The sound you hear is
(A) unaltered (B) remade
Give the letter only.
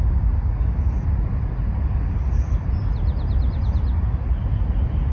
A